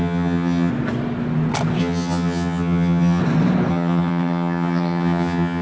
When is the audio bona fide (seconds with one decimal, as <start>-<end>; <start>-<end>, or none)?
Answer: 0.7-1.8; 3.2-3.7